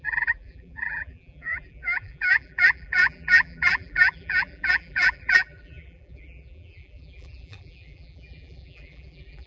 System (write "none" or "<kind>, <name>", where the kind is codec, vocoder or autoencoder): vocoder, BigVGAN v2